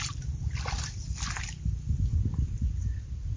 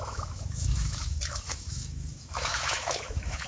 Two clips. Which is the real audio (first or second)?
first